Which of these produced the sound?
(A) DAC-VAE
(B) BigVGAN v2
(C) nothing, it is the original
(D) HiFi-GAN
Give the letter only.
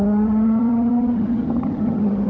D